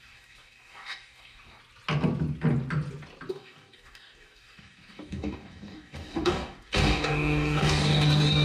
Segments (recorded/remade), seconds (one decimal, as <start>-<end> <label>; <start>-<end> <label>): 0.0-1.6 remade; 1.6-3.3 recorded; 3.3-8.4 remade